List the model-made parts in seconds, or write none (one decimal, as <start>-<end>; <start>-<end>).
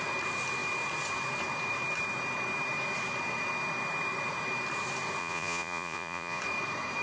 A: 5.2-6.4